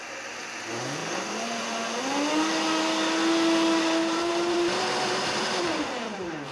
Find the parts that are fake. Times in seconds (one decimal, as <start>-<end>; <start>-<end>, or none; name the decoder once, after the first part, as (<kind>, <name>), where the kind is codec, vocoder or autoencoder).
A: 1.0-2.0 (vocoder, BigVGAN v2); 4.0-6.5